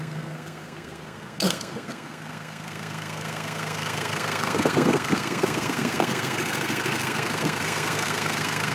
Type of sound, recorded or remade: remade